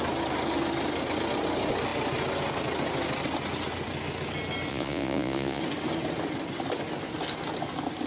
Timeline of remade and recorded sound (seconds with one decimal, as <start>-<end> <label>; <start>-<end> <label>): 0.0-4.7 recorded; 4.7-5.6 remade; 5.6-8.1 recorded